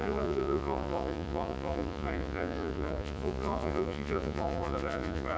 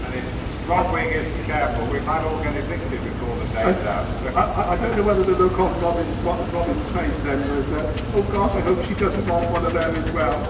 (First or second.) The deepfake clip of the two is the first